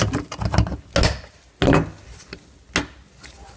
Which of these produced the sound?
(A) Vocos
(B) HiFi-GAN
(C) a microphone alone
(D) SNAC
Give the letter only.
C